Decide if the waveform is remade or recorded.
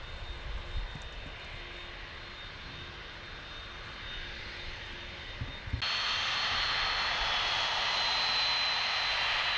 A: recorded